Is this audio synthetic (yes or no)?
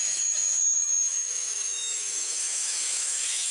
yes